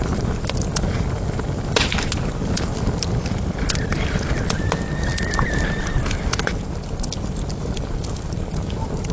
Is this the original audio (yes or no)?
yes